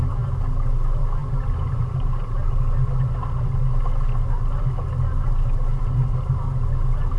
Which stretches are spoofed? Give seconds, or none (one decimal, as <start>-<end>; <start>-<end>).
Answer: none